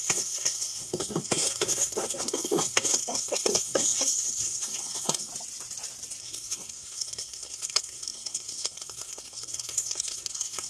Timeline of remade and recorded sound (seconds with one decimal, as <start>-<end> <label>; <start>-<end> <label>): 0.0-5.3 remade; 5.3-6.2 recorded; 6.2-10.7 remade